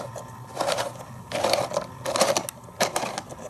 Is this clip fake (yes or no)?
no